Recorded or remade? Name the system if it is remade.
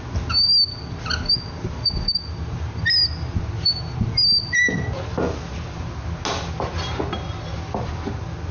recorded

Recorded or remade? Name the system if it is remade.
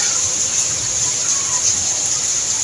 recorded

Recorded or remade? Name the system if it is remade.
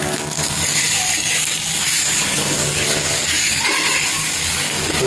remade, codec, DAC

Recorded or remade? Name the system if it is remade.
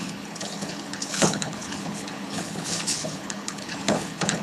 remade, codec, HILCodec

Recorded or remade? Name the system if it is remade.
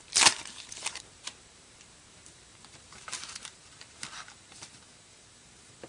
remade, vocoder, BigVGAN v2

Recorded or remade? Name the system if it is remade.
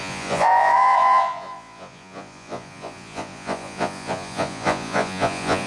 remade, vocoder, Vocos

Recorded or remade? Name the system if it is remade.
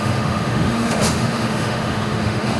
remade, autoencoder, DAC-VAE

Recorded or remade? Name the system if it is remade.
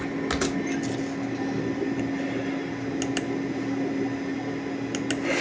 recorded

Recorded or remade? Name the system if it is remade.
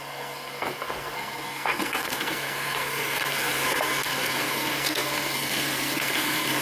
remade, codec, SNAC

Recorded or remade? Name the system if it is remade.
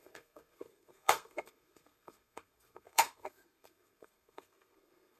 remade, codec, SNAC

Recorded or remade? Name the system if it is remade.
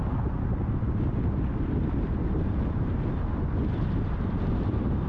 recorded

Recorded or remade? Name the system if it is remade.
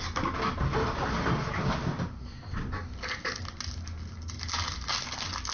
recorded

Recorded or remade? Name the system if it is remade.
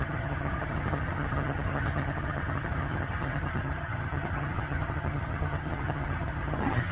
remade, vocoder, HiFi-GAN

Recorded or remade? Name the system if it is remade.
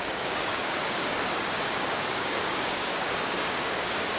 remade, codec, DAC